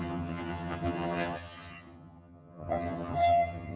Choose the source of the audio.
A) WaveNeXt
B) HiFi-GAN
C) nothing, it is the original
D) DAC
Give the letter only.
B